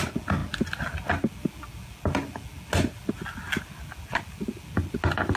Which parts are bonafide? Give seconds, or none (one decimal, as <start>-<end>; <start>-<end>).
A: 0.0-5.4